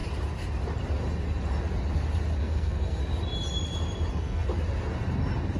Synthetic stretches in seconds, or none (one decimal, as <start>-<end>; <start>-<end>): 2.4-3.0; 4.1-4.5